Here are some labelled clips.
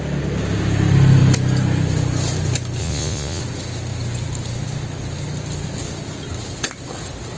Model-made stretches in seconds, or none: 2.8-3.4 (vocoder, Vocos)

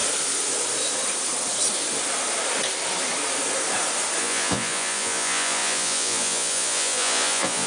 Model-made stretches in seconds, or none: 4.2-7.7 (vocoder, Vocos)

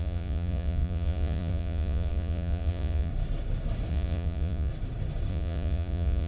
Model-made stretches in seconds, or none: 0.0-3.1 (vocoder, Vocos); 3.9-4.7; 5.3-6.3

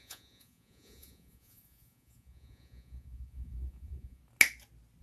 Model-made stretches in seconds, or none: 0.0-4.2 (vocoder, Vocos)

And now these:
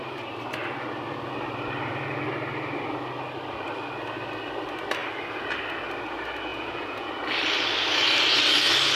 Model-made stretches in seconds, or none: 6.5-7.1 (vocoder, Vocos)

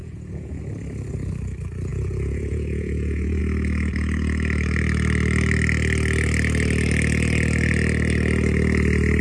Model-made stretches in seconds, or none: 0.0-0.6 (vocoder, Vocos); 1.9-3.4